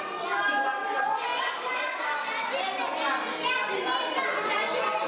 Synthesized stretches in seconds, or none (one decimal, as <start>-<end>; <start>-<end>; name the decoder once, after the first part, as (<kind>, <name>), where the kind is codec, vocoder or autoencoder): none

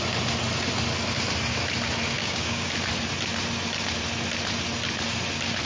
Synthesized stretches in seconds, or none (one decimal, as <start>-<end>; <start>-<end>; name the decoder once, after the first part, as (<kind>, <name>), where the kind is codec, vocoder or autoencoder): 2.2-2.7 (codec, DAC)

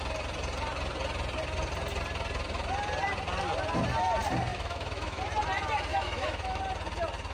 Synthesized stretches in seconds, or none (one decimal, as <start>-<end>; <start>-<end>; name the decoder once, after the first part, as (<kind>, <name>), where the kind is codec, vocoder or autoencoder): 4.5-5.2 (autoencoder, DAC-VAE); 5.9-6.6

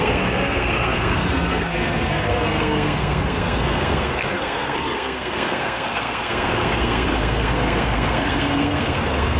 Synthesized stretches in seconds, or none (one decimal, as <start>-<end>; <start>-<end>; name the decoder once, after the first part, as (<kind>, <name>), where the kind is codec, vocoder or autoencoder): 0.0-9.4 (codec, SNAC)